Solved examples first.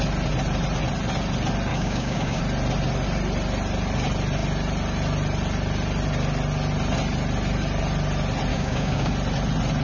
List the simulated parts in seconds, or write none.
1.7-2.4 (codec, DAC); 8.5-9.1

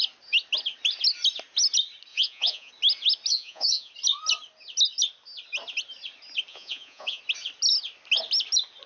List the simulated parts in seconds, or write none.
2.1-2.7 (vocoder, Vocos); 3.3-3.9; 6.5-7.2

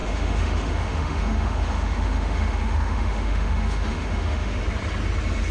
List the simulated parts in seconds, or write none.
0.0-4.6 (autoencoder, DAC-VAE)

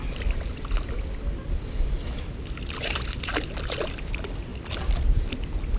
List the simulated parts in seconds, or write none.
none